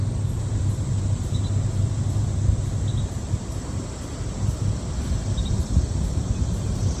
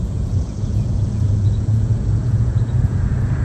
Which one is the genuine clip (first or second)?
first